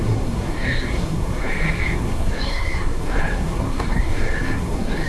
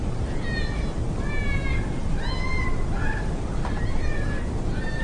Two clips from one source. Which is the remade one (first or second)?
first